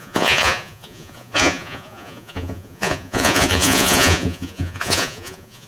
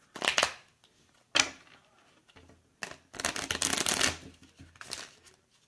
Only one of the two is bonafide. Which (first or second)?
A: second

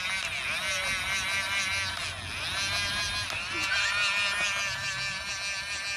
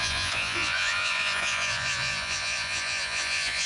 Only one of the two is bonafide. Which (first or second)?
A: first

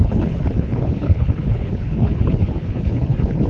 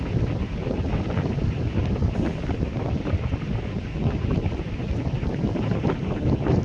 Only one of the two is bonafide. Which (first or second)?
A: second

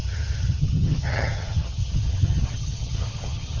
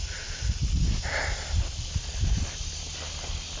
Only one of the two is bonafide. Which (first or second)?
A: second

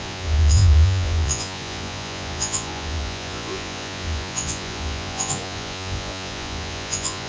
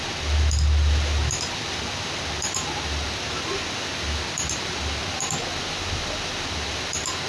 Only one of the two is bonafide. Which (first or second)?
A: second